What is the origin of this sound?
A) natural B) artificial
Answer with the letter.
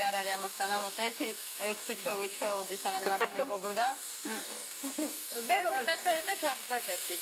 B